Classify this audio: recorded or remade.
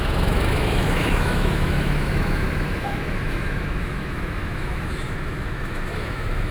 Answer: remade